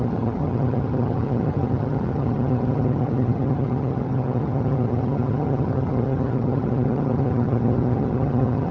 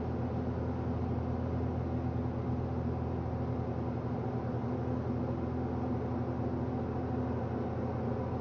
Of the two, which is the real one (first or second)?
second